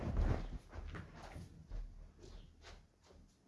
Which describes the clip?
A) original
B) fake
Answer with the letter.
A